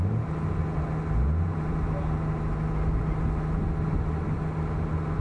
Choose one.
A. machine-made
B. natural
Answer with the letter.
B